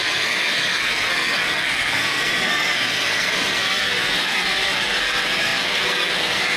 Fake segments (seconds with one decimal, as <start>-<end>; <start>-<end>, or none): 0.0-6.6